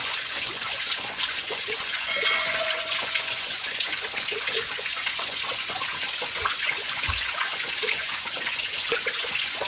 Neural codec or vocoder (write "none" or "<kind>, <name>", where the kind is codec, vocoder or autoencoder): vocoder, Vocos